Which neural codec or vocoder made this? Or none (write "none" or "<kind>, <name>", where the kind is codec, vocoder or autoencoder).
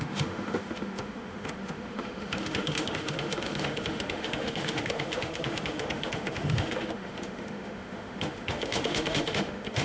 autoencoder, DAC-VAE